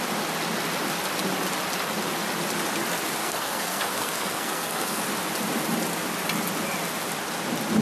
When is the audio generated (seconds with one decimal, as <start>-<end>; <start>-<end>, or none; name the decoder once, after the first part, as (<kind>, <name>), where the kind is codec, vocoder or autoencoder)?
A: 3.2-5.0 (codec, SNAC)